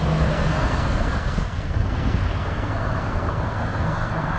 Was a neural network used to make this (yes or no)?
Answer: yes